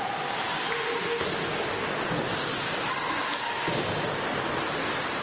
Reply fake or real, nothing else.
real